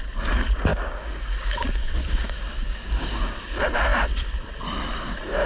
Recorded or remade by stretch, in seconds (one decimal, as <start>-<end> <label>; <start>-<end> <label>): 0.0-0.7 recorded; 0.7-3.3 remade; 3.3-5.5 recorded